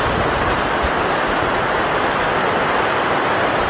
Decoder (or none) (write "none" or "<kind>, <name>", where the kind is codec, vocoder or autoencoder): none